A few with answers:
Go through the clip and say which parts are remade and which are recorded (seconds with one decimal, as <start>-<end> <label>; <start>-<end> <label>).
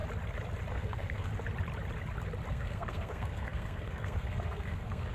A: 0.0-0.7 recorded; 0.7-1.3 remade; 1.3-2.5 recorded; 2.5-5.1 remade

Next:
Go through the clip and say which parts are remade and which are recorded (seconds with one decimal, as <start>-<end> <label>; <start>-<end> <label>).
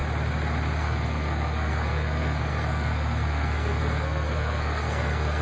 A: 0.0-0.8 recorded; 0.8-5.4 remade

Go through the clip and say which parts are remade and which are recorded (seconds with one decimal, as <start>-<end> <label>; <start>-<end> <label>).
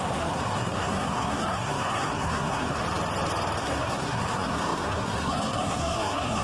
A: 0.0-2.8 remade; 2.8-3.6 recorded; 3.6-6.4 remade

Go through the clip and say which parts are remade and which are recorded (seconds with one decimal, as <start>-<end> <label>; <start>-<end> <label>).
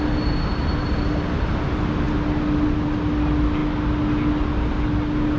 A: 0.0-5.4 recorded